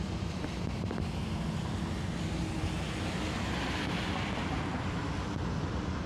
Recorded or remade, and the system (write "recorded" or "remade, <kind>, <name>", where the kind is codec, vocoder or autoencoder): recorded